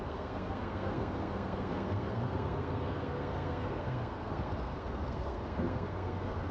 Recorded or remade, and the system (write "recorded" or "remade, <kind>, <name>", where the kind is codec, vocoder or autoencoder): remade, codec, SNAC